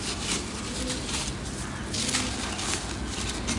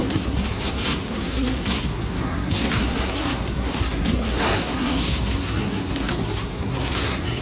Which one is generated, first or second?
second